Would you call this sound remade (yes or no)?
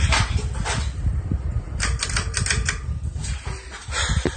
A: no